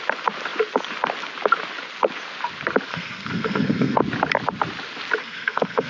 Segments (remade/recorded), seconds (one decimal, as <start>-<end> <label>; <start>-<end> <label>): 0.0-2.9 recorded; 2.9-4.0 remade; 4.0-5.2 recorded; 5.2-5.9 remade